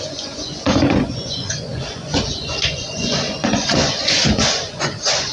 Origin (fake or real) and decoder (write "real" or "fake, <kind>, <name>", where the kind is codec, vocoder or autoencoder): fake, vocoder, Vocos